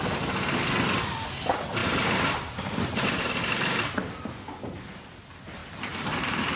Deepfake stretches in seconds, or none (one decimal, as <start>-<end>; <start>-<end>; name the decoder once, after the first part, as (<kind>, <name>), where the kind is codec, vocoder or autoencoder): 1.8-3.4 (vocoder, BigVGAN v2); 5.6-6.6